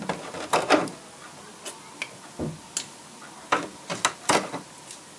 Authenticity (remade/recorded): recorded